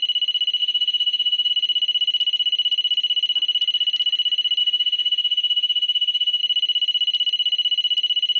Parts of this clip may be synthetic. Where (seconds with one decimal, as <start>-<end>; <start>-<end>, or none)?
0.6-1.5; 4.6-6.4